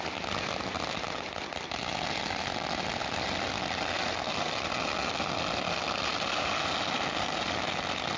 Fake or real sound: real